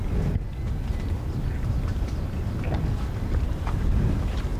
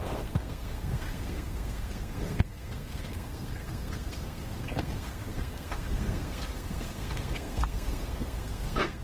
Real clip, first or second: first